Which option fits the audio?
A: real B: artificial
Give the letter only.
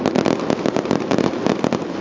A